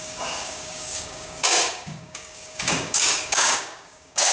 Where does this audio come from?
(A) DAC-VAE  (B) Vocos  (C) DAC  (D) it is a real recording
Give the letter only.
C